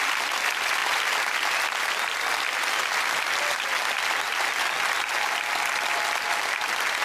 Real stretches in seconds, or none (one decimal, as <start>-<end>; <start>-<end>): 0.0-7.0